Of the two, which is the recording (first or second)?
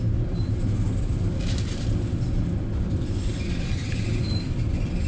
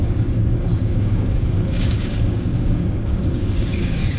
first